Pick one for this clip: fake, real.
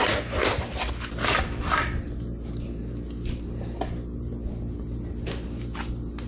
real